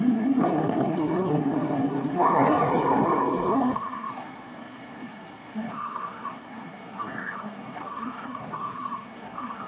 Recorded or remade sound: remade